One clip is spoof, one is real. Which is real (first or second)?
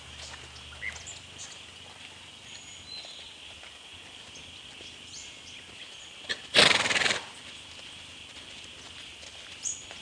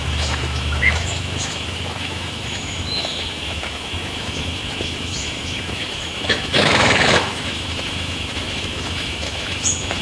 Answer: first